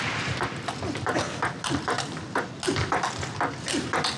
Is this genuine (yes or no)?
yes